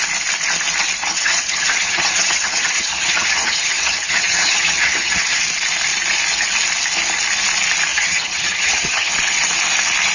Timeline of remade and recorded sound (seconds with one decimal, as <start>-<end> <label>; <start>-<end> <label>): 0.0-1.0 recorded; 1.0-5.4 remade; 5.4-7.9 recorded; 7.9-9.1 remade; 9.1-10.1 recorded